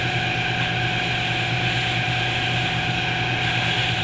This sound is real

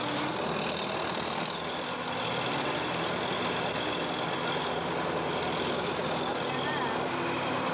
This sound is real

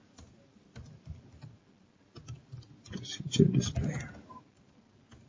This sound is real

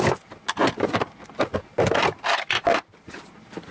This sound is real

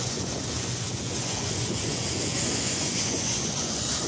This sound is fake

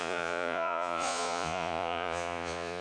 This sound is fake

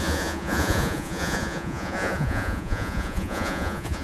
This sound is fake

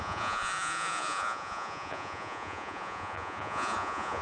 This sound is fake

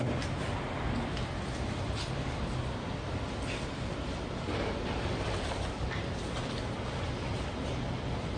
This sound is real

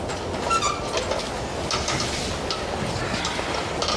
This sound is real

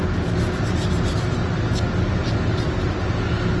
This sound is real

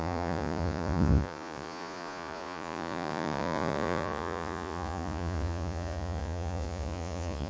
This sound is fake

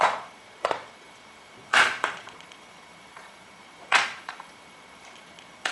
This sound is fake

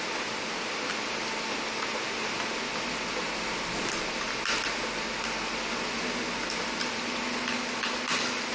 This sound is real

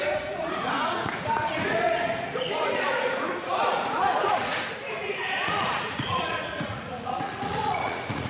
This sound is fake